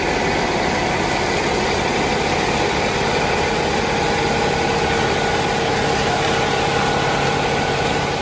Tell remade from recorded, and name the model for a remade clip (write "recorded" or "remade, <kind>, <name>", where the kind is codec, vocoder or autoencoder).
recorded